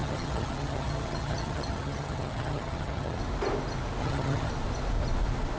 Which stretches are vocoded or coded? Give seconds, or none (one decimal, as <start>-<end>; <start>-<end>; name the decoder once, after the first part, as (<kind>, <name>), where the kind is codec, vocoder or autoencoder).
0.0-3.2 (vocoder, HiFi-GAN); 4.0-4.5